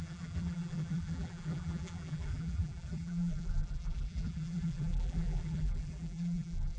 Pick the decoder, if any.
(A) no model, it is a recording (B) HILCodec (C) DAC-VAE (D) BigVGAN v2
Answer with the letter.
D